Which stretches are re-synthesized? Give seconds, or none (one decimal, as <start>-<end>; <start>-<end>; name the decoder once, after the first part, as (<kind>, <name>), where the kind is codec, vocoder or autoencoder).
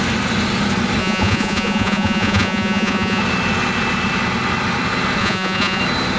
1.0-3.2 (vocoder, Vocos); 5.2-5.8